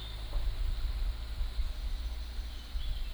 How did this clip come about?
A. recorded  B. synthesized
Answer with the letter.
A